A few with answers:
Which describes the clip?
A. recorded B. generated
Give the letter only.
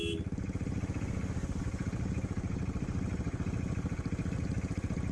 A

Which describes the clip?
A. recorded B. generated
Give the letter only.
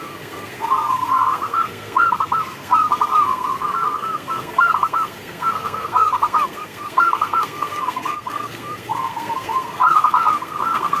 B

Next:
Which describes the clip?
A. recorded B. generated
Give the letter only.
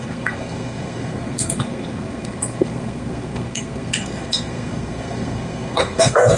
B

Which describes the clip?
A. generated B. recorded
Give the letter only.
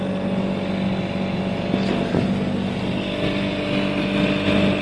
B